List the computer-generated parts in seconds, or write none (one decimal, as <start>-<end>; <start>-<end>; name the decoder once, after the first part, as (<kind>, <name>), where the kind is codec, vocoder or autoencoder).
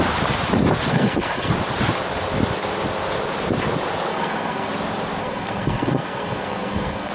0.9-1.5 (codec, SNAC); 4.1-4.7; 5.2-7.1